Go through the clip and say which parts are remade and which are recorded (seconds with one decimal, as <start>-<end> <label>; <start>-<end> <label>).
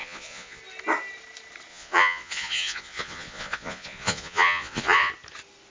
0.0-0.6 remade; 0.6-1.7 recorded; 1.7-5.1 remade; 5.1-5.7 recorded